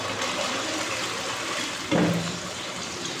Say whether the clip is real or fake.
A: real